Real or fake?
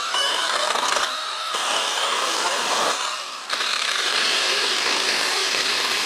fake